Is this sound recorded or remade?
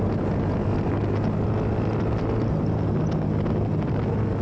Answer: recorded